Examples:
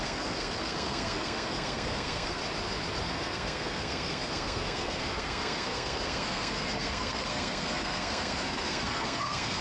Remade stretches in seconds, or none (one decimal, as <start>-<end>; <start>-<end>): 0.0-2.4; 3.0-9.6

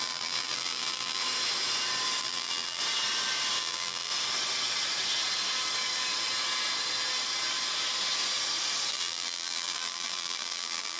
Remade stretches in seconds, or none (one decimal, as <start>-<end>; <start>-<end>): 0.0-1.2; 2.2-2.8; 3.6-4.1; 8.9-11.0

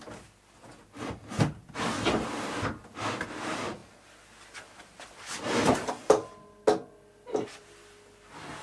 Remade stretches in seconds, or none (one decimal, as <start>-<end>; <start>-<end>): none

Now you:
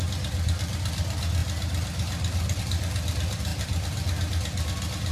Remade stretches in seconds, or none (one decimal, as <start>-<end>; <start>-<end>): none

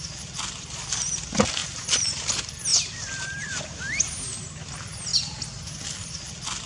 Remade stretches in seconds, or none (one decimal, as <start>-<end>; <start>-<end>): 1.6-2.2; 2.7-4.0

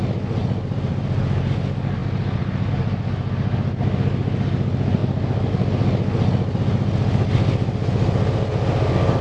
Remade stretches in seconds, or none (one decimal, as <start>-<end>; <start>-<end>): 0.4-1.2; 2.0-2.7